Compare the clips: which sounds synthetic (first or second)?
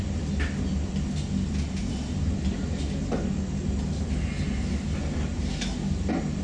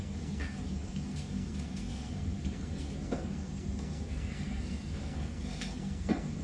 second